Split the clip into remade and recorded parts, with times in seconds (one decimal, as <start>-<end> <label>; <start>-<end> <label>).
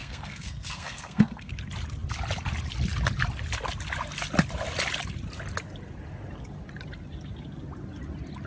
0.0-1.5 remade; 1.5-8.5 recorded